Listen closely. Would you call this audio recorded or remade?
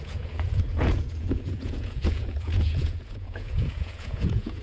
remade